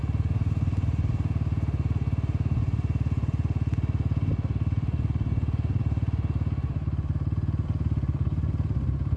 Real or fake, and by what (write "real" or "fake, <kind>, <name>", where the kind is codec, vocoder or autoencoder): real